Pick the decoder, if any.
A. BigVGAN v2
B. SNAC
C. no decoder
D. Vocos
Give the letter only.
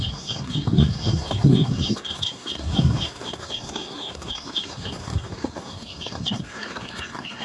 B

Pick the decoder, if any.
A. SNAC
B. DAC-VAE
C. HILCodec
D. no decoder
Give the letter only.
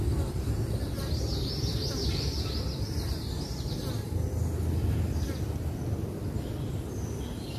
D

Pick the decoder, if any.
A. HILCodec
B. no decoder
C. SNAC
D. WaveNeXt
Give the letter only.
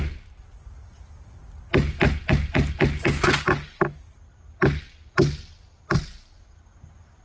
B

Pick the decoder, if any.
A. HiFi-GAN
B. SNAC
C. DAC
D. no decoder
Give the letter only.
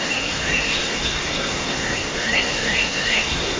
B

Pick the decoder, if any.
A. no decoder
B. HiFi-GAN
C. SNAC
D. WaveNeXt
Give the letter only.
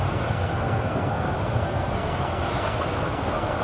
C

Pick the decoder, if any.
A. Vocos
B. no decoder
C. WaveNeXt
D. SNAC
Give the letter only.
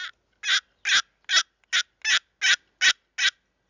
B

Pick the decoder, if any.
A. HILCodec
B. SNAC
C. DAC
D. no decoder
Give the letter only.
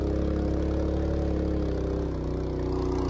D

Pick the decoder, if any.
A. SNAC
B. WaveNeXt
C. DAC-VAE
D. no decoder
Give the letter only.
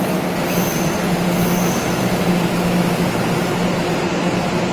D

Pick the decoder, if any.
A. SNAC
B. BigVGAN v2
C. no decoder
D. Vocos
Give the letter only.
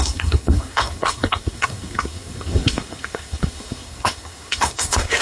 A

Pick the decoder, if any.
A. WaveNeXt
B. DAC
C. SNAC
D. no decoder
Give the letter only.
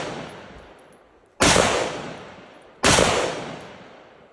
D